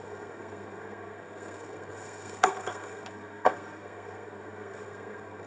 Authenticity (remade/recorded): remade